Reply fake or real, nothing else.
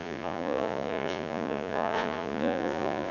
fake